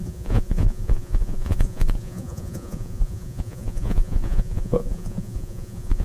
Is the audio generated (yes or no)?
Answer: yes